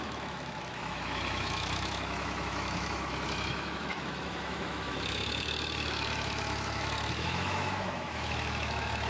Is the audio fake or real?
fake